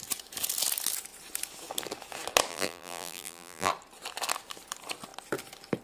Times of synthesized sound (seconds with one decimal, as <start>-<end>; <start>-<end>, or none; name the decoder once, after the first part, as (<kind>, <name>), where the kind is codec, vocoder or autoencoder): 2.5-3.7 (vocoder, BigVGAN v2)